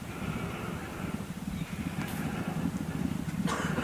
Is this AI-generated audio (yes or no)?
no